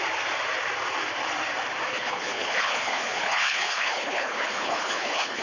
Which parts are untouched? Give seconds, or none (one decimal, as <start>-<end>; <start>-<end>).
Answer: 0.0-1.9